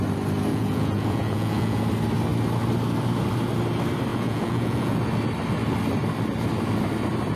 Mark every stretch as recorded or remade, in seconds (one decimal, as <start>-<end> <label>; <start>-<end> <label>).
0.0-0.5 recorded; 0.5-1.8 remade; 1.8-4.1 recorded; 4.1-5.0 remade; 5.0-7.4 recorded